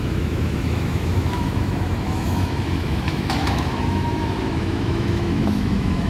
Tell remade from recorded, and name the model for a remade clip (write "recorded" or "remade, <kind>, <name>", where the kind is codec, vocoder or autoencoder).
remade, autoencoder, DAC-VAE